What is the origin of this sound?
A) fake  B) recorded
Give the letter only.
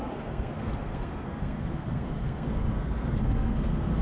A